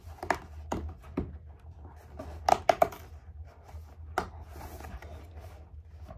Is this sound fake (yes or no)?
no